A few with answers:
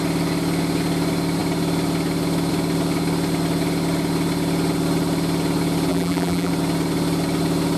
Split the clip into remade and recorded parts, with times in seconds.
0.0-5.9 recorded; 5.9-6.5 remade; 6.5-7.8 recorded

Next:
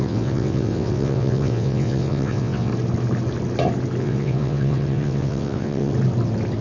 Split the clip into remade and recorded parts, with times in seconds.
0.0-2.7 remade; 2.7-4.0 recorded; 4.0-5.9 remade; 5.9-6.6 recorded

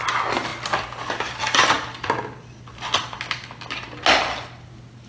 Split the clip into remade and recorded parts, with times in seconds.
0.0-5.1 recorded

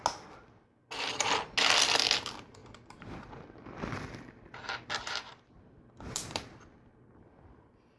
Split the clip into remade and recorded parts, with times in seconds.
0.0-2.6 recorded; 2.6-6.6 remade; 6.6-8.0 recorded

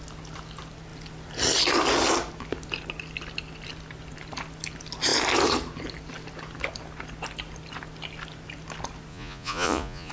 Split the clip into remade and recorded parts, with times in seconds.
0.0-9.1 recorded; 9.1-10.1 remade

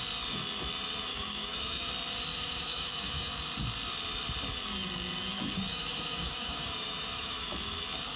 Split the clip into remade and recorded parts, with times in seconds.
0.0-1.1 recorded; 1.1-1.9 remade; 1.9-2.3 recorded; 2.3-3.3 remade; 3.3-5.7 recorded; 5.7-7.5 remade; 7.5-8.2 recorded